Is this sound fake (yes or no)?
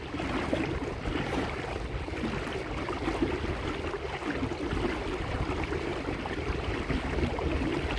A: no